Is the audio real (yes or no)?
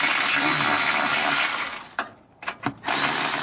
yes